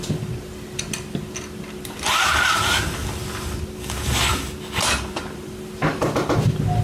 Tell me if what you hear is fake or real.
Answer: real